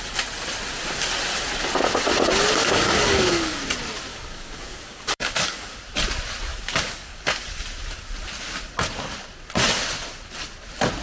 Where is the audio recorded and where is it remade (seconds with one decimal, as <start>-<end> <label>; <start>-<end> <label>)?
0.0-2.6 recorded; 2.6-3.6 remade; 3.6-4.1 recorded; 4.1-5.8 remade; 5.8-6.5 recorded; 6.5-7.2 remade; 7.2-11.0 recorded